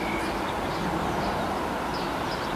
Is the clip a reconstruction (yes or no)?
no